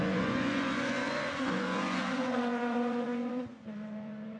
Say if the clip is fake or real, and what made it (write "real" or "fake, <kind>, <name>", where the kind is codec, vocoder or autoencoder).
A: fake, vocoder, Vocos